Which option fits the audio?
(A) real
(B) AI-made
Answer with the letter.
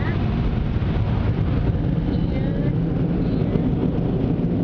A